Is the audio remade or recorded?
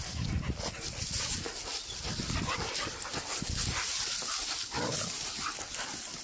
recorded